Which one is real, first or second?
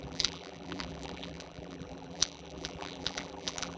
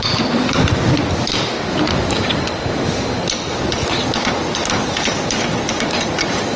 second